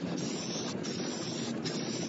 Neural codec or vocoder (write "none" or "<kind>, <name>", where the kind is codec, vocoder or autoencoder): none